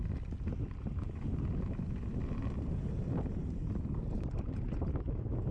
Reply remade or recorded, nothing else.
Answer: recorded